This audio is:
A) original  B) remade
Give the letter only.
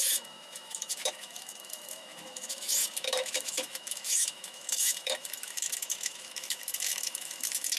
B